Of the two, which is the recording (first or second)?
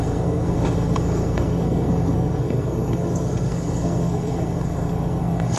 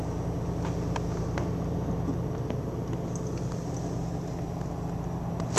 second